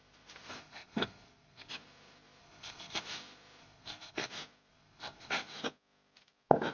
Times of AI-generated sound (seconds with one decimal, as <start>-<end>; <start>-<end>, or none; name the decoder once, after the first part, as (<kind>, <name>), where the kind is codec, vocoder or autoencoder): 0.6-1.7 (codec, SNAC); 2.4-3.0; 3.6-4.3; 4.7-5.3